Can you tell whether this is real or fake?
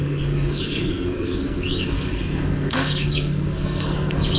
fake